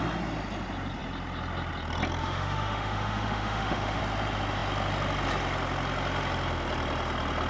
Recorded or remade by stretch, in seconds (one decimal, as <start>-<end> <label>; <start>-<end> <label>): 0.0-2.2 recorded; 2.2-4.0 remade; 4.0-7.5 recorded